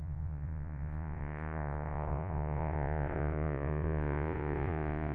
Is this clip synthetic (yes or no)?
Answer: yes